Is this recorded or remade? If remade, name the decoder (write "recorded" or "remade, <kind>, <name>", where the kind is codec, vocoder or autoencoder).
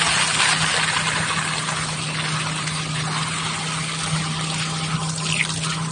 recorded